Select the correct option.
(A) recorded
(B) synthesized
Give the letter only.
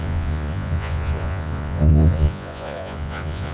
B